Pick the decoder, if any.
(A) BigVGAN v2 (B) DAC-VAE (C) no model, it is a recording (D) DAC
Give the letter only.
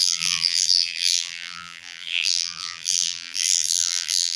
A